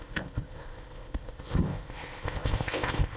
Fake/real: fake